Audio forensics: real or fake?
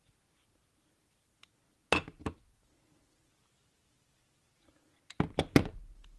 real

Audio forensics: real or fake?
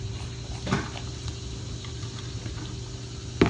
real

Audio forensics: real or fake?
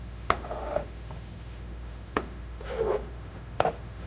fake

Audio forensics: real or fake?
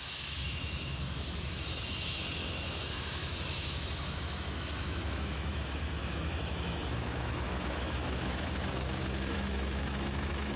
fake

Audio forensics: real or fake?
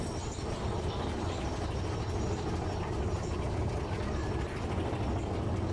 real